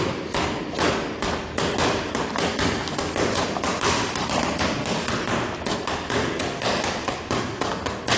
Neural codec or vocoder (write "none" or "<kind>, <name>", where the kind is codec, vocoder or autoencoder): none